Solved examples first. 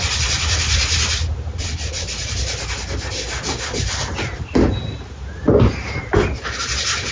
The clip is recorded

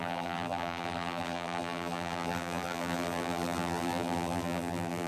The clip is remade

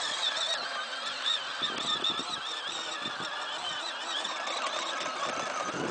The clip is recorded